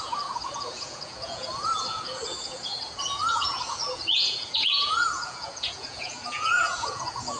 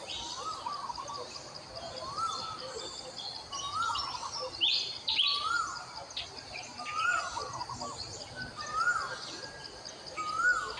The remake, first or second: first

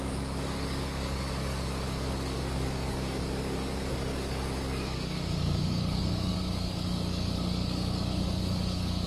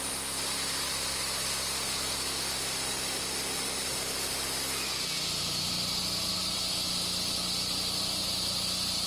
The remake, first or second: first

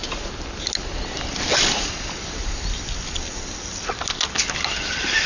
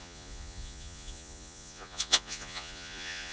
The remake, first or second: second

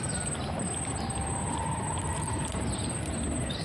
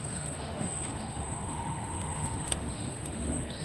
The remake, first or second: second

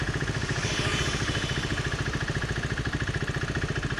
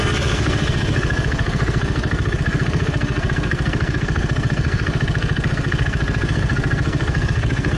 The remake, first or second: second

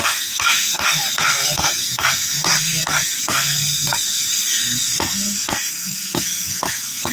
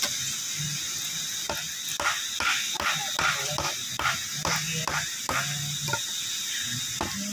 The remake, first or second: first